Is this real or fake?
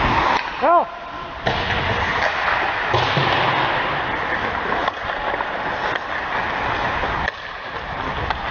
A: real